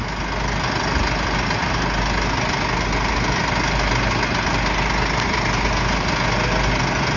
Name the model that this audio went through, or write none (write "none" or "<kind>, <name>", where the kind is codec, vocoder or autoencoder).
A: none